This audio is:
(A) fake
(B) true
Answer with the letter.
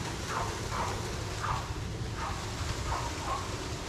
B